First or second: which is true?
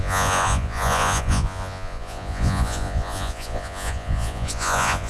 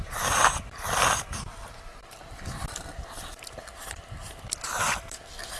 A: second